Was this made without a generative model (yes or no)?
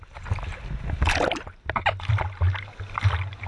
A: yes